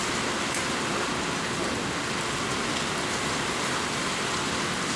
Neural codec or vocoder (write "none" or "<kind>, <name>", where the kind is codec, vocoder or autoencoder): none